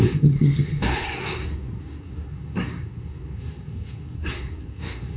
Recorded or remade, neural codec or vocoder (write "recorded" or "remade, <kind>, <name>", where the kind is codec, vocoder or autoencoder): remade, codec, SNAC